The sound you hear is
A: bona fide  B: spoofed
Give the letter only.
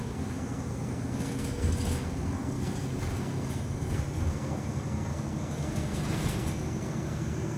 B